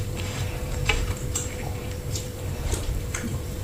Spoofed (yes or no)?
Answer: yes